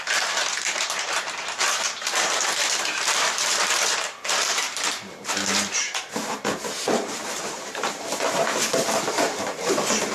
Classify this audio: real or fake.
fake